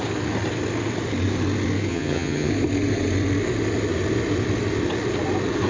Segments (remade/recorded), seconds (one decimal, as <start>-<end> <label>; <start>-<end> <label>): 0.0-1.9 recorded; 1.9-2.5 remade; 2.5-5.7 recorded